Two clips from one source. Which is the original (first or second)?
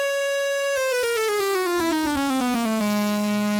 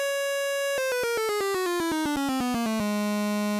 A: second